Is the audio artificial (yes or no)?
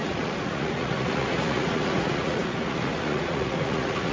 yes